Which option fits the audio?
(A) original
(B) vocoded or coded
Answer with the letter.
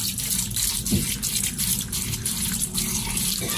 A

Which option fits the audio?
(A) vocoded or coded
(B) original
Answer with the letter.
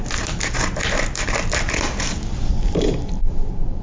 B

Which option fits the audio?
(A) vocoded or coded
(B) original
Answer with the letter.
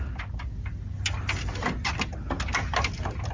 B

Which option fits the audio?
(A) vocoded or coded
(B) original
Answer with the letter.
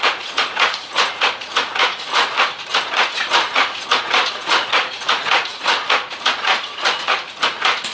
A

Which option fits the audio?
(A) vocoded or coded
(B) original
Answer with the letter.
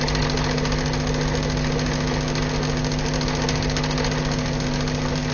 B